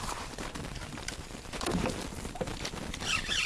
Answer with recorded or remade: remade